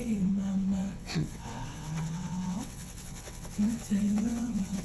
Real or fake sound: fake